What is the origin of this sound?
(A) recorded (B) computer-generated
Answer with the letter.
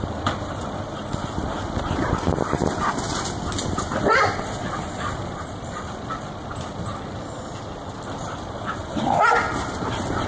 A